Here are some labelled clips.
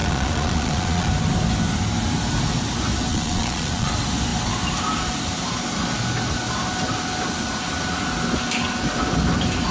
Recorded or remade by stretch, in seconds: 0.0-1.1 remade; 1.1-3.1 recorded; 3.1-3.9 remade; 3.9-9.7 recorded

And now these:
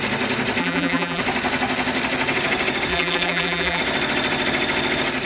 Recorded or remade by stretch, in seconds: 0.0-0.6 recorded; 0.6-1.2 remade; 1.2-2.9 recorded; 2.9-3.8 remade; 3.8-5.3 recorded

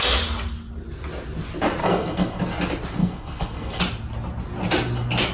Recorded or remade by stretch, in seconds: 0.0-1.8 recorded; 1.8-2.4 remade; 2.4-3.0 recorded; 3.0-3.8 remade; 3.8-5.3 recorded